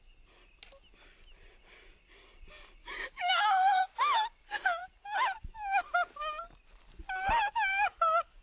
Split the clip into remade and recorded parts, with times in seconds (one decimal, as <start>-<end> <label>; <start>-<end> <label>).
0.0-2.8 recorded; 2.8-3.8 remade; 3.8-8.4 recorded